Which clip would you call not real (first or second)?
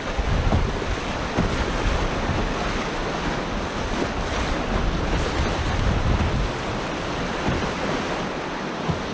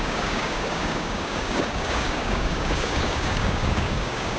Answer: second